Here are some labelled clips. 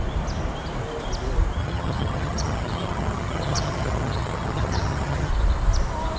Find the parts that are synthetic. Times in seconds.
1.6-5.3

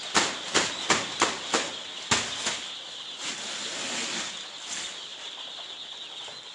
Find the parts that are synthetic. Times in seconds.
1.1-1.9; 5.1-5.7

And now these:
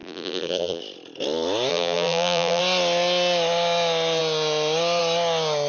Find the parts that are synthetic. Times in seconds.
0.0-0.8; 1.7-2.6